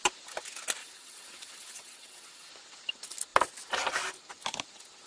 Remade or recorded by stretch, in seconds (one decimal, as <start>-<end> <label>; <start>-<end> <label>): 0.0-0.8 recorded; 0.8-2.5 remade; 2.5-5.1 recorded